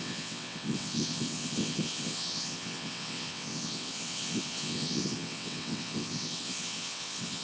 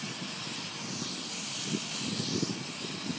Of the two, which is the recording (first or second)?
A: second